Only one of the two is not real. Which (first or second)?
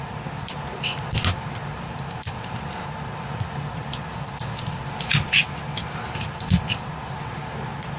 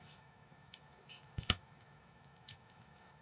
second